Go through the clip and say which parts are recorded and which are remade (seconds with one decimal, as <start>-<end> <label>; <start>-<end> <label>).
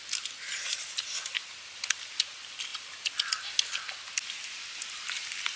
0.0-5.6 recorded